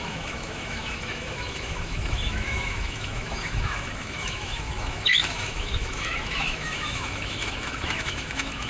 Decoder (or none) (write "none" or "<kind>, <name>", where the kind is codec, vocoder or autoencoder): autoencoder, DAC-VAE